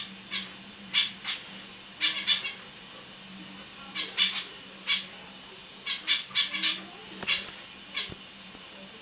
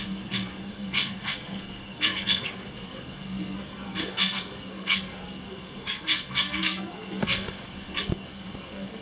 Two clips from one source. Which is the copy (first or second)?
second